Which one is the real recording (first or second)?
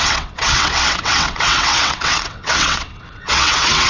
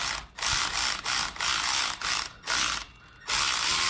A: second